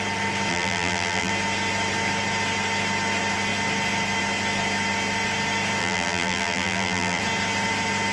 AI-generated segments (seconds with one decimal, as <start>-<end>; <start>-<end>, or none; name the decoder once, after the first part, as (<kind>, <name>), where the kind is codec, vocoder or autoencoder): 0.5-1.3 (vocoder, BigVGAN v2); 5.8-7.2